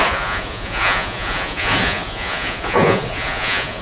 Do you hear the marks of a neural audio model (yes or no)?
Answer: yes